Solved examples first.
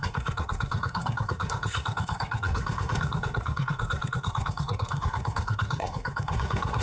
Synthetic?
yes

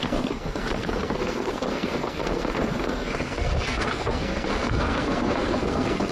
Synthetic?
yes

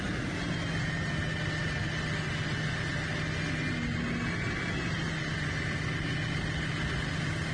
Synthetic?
no